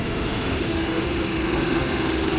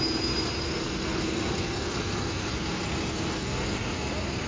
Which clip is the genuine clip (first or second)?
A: second